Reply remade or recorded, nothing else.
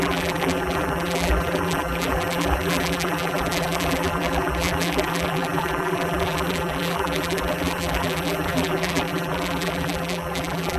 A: remade